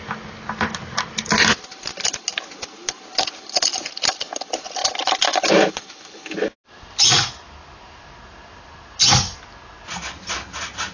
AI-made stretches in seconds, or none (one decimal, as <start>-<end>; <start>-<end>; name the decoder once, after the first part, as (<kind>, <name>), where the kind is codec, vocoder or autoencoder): none